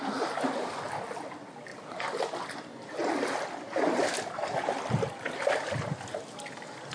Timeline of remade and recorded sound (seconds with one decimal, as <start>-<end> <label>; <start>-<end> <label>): 0.0-6.9 recorded